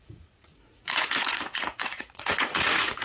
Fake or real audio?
fake